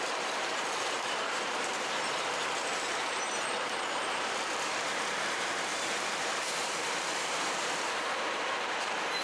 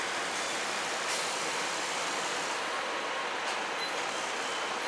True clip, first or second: second